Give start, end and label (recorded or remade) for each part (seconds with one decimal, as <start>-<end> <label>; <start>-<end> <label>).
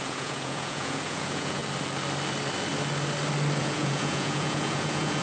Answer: 0.0-1.6 remade; 1.6-3.6 recorded; 3.6-5.2 remade